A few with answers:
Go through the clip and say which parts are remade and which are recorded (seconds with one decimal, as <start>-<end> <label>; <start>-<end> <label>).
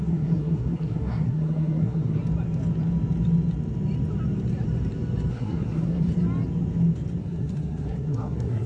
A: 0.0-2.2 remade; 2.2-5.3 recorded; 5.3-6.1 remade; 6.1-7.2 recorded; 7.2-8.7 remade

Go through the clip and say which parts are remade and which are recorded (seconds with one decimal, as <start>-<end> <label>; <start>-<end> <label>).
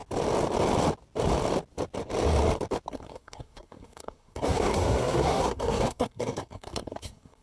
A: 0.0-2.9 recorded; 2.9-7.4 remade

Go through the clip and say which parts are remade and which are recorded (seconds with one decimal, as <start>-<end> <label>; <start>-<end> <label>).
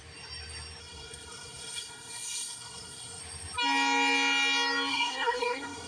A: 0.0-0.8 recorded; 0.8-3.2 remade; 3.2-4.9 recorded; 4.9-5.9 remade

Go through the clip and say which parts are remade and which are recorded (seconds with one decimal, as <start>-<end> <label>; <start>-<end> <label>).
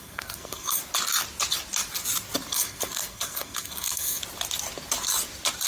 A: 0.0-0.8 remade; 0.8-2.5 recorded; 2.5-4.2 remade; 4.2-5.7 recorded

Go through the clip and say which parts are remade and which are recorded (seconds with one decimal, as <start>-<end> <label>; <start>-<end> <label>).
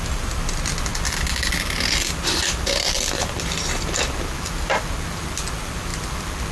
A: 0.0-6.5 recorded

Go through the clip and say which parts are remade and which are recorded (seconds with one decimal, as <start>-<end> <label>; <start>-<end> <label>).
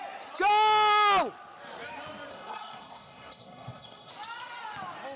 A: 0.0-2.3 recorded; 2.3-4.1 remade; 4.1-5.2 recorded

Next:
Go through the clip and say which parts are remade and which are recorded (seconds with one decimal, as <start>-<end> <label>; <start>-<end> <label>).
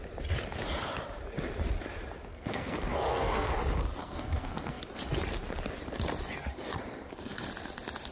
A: 0.0-2.3 recorded; 2.3-3.5 remade; 3.5-4.0 recorded; 4.0-4.8 remade; 4.8-8.1 recorded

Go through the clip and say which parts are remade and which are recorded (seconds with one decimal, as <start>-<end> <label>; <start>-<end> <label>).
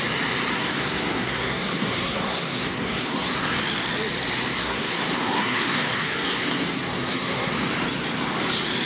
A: 0.0-0.5 recorded; 0.5-3.6 remade; 3.6-4.6 recorded; 4.6-7.5 remade; 7.5-8.9 recorded